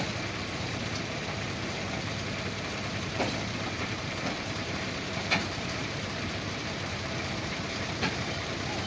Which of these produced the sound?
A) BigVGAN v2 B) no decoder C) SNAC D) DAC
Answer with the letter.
A